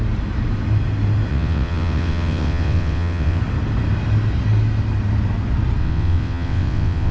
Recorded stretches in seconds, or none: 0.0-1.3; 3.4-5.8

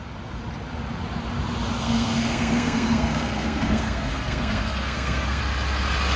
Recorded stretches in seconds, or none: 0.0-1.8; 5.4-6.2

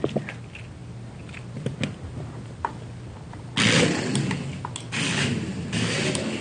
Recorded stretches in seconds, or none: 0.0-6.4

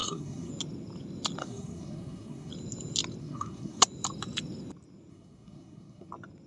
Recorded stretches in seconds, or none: 0.5-1.4; 2.5-3.2; 3.8-5.1; 6.1-6.5

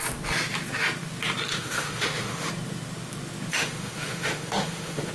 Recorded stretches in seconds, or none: 0.0-1.5; 2.5-3.5

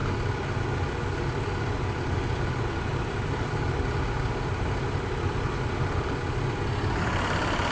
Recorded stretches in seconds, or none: 0.0-1.4

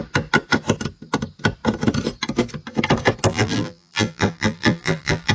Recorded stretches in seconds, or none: 0.0-3.3

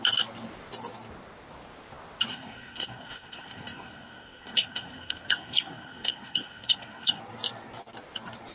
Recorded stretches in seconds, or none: 0.0-2.3; 7.2-8.5